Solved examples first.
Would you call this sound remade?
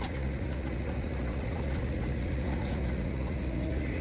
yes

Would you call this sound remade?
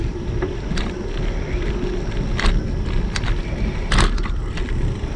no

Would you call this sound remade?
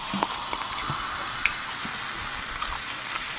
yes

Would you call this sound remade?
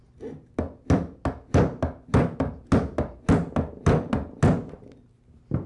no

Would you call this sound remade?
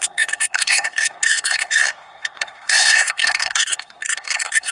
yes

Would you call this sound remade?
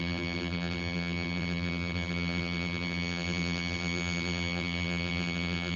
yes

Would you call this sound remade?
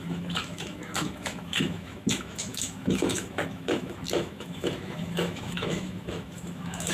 yes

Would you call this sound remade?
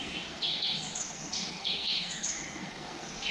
yes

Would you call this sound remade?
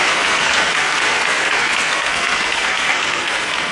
yes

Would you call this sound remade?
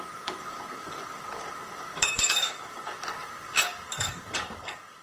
yes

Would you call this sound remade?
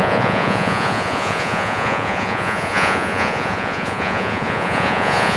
yes